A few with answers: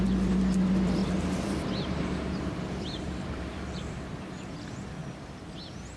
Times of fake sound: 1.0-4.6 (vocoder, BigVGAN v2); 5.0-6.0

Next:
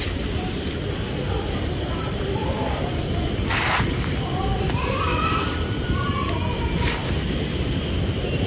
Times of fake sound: 0.0-8.5 (vocoder, BigVGAN v2)

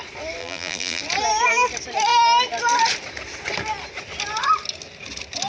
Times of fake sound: 0.4-1.0 (vocoder, BigVGAN v2)

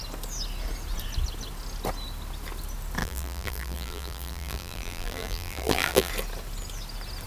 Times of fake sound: 3.0-6.1 (vocoder, BigVGAN v2)